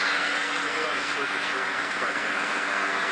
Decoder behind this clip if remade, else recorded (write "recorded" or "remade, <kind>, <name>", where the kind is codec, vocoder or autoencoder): remade, codec, SNAC